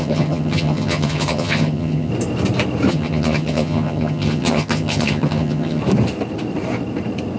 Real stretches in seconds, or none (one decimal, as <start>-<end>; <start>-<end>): 2.1-2.9; 5.8-7.4